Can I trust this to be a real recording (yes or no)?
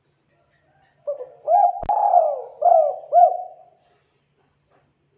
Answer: yes